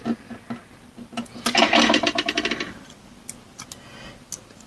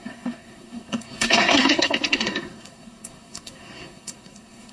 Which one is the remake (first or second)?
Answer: second